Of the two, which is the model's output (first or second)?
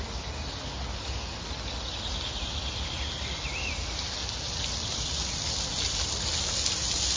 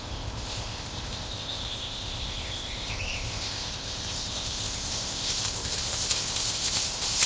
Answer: second